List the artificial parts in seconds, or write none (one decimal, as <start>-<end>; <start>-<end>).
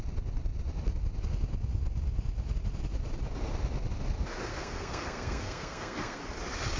4.5-6.2